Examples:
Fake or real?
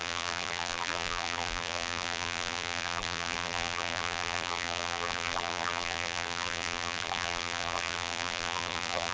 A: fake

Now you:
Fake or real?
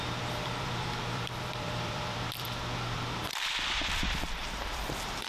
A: fake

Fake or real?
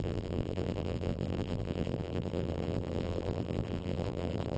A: fake